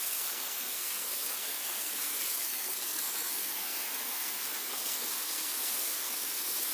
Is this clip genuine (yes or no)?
no